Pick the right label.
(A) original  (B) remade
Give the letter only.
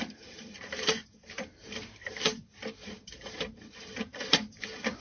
B